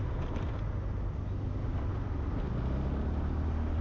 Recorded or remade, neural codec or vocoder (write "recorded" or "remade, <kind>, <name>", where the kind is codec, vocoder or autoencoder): recorded